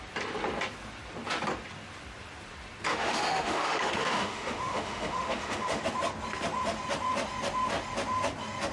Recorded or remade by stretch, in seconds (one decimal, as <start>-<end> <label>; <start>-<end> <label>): 0.0-2.9 recorded; 2.9-5.8 remade; 5.8-8.7 recorded